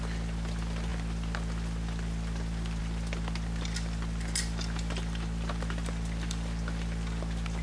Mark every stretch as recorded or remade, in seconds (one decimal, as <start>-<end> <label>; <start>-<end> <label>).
0.0-7.6 recorded